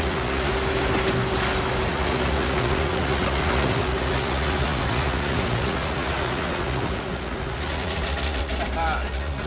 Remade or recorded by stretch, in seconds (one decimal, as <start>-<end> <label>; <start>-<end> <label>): 0.0-0.5 remade; 0.5-1.9 recorded; 1.9-8.5 remade; 8.5-9.1 recorded; 9.1-9.5 remade